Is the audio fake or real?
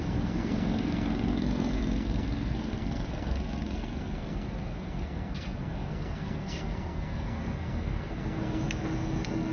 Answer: fake